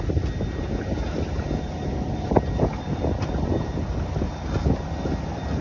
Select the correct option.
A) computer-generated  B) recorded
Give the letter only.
B